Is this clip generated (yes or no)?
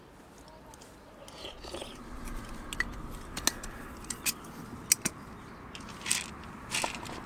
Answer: no